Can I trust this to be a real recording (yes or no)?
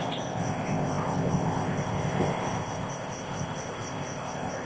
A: no